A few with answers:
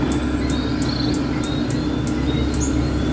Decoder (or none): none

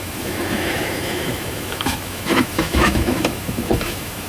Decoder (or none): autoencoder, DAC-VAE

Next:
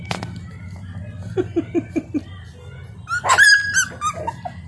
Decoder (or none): none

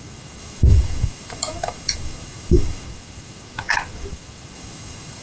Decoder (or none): autoencoder, DAC-VAE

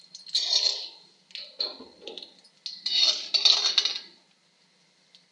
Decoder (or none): none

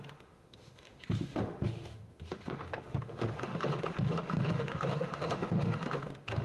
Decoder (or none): autoencoder, DAC-VAE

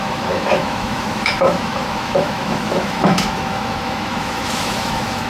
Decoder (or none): autoencoder, DAC-VAE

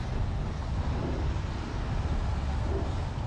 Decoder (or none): none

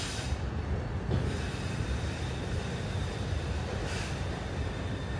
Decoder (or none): none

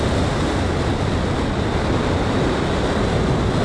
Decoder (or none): none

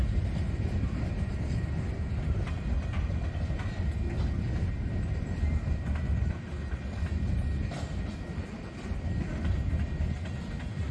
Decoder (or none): none